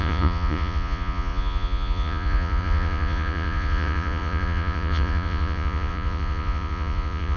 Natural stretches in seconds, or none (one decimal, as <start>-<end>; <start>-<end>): none